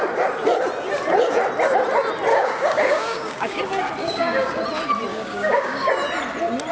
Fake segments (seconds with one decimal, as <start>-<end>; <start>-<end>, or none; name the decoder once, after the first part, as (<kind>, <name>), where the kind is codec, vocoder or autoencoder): 2.3-3.6 (codec, DAC); 4.0-4.6; 5.1-5.9